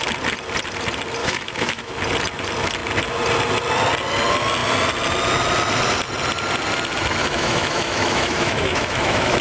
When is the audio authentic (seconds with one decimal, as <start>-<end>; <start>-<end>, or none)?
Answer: 0.0-1.2; 1.9-7.2